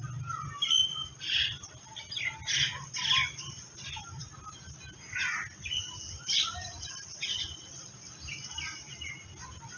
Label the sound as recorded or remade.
recorded